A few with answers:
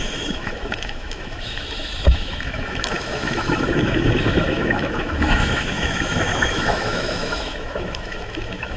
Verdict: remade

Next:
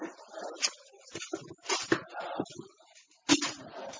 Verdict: recorded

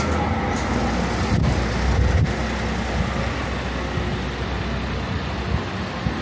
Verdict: recorded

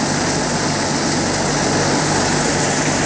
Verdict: recorded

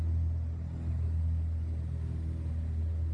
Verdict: recorded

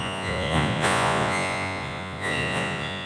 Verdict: remade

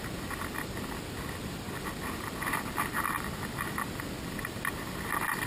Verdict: recorded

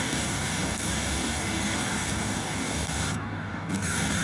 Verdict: remade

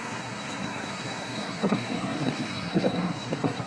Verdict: remade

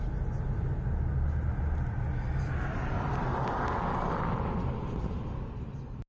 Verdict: recorded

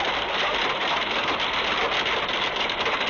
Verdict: recorded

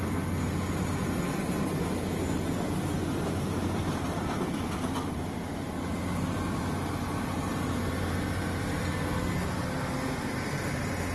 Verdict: recorded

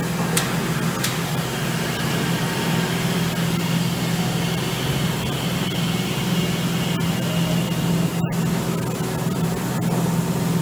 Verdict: recorded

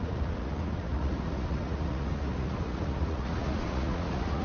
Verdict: remade